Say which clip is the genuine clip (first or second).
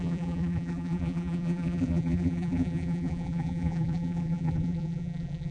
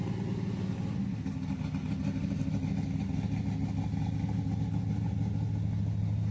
second